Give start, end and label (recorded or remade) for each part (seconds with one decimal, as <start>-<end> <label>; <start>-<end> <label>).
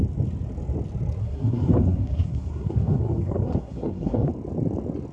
0.0-1.2 recorded; 1.2-4.3 remade; 4.3-5.1 recorded